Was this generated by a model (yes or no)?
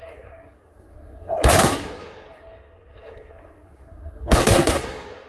yes